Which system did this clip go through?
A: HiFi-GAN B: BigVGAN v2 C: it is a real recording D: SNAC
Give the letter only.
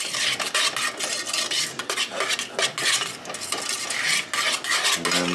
C